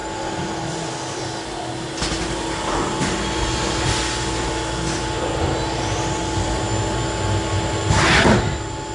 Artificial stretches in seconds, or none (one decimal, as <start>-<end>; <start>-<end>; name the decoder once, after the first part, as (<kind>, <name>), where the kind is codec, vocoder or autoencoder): none